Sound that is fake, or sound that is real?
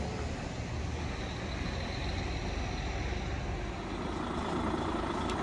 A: real